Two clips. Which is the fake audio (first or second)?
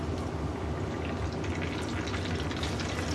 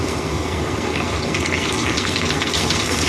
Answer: second